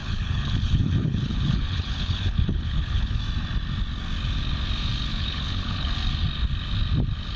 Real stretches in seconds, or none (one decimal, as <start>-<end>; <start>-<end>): 3.2-5.1; 5.9-7.4